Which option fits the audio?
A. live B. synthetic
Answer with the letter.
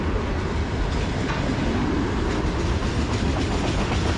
A